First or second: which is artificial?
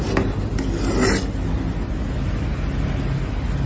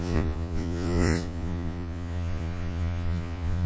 second